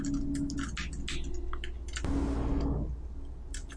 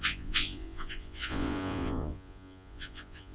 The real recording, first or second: first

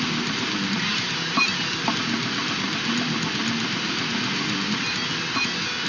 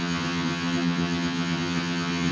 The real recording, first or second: first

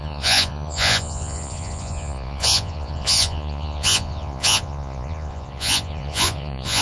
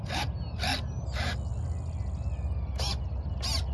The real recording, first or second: second